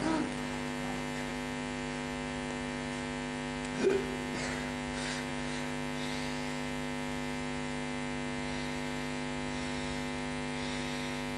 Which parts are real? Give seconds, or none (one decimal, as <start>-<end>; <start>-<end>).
0.0-11.4